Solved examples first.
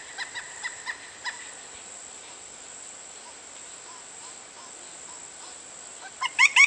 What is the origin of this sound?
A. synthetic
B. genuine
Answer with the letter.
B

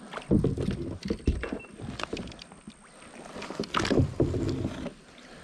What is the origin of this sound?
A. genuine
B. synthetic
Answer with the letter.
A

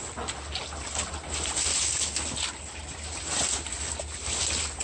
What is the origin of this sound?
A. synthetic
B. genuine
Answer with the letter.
B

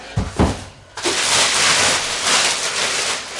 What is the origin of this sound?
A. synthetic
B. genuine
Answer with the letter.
B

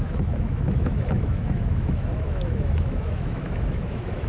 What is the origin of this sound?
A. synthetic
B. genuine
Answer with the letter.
A